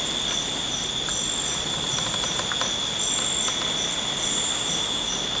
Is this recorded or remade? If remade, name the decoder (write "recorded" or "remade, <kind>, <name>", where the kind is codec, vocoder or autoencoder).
recorded